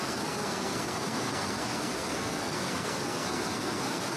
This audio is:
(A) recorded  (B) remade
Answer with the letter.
B